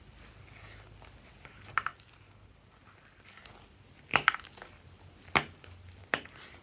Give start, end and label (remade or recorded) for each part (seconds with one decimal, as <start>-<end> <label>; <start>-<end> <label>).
0.0-6.6 recorded